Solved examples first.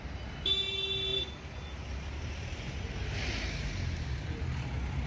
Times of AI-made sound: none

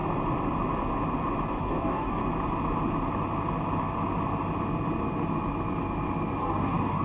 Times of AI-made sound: 1.6-2.2 (codec, DAC); 6.4-7.0

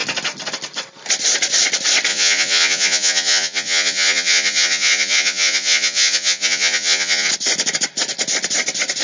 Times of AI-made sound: 2.1-7.3 (vocoder, Vocos)

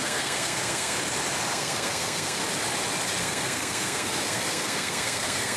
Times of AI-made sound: 0.0-1.0 (codec, SNAC); 1.5-2.4; 3.2-5.6

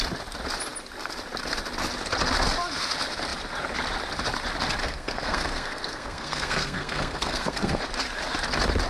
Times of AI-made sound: 4.8-7.8 (codec, SNAC)

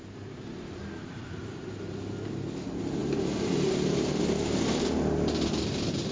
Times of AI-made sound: none